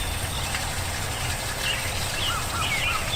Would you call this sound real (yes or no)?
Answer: yes